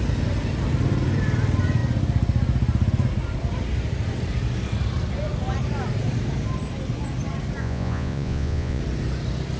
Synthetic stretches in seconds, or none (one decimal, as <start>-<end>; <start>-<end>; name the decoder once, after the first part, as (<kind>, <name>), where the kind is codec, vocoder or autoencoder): 7.6-8.8 (vocoder, Vocos)